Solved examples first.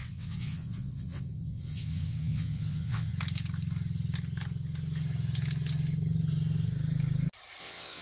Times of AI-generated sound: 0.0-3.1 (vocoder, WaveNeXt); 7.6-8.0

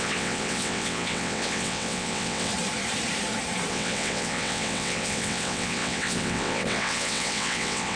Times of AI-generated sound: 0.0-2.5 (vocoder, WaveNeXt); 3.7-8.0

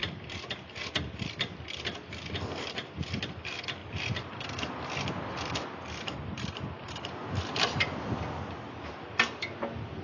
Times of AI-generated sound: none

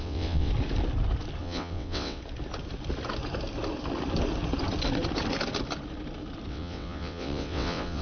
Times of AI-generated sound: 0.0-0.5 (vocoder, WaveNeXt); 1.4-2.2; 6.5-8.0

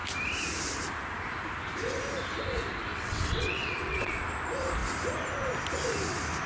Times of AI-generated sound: 2.9-4.2 (vocoder, WaveNeXt)